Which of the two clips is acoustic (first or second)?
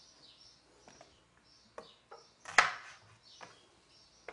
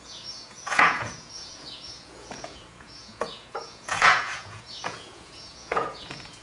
first